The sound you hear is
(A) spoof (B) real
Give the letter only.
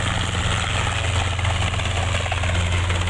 B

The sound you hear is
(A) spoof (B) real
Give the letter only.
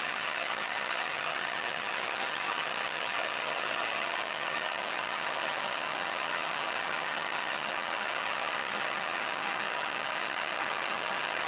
A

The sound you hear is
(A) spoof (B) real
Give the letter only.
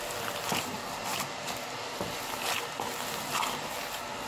B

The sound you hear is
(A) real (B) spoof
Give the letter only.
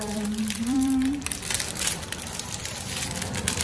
B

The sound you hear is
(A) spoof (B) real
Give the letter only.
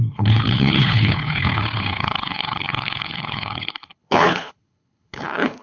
A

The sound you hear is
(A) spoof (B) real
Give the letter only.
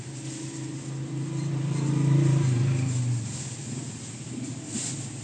B